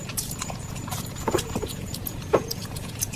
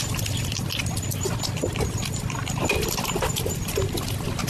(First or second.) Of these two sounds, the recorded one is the second